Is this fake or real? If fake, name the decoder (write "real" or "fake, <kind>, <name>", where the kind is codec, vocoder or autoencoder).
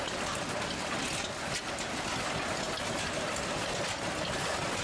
real